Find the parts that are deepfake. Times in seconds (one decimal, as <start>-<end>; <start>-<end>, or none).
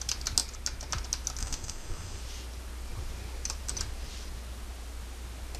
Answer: 1.4-2.2